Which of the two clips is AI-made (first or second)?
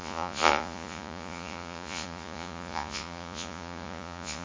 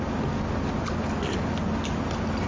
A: first